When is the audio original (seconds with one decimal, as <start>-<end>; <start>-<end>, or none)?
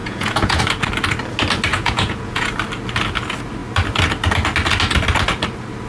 0.6-1.7; 2.5-5.9